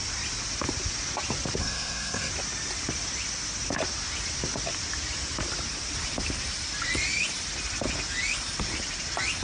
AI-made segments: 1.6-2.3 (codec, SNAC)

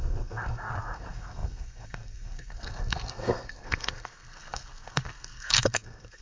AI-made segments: 0.0-6.2 (codec, SNAC)

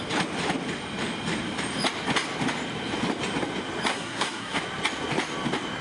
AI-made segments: 3.9-4.6 (codec, SNAC)